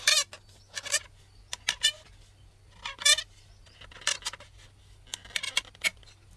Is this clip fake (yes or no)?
no